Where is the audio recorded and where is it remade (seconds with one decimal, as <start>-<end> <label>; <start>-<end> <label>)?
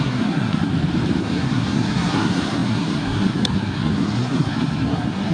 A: 0.0-0.7 remade; 0.7-1.2 recorded; 1.2-5.3 remade